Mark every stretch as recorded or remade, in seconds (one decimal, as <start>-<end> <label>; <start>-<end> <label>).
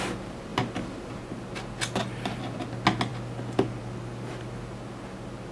0.0-5.5 recorded